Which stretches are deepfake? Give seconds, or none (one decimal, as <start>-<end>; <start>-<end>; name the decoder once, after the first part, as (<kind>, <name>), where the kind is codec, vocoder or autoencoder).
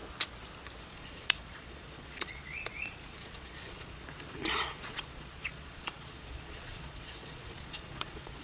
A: 0.8-8.4 (vocoder, Vocos)